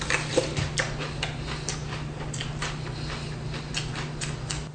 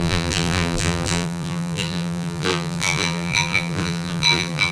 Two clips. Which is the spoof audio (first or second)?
second